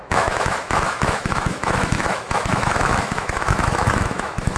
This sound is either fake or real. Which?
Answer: fake